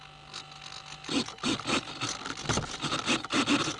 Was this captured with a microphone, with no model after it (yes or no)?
yes